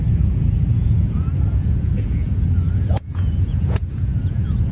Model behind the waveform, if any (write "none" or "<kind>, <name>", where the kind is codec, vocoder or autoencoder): vocoder, Vocos